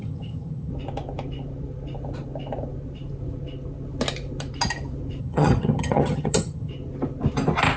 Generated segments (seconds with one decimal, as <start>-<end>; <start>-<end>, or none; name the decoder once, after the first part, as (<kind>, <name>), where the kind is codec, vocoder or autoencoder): 0.0-0.7 (vocoder, HiFi-GAN); 5.2-6.7